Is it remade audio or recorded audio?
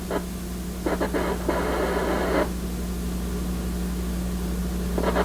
recorded